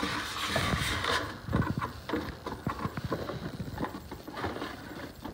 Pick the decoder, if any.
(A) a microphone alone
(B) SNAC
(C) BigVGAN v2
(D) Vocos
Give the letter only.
A